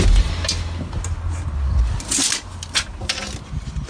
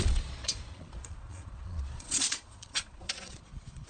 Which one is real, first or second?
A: first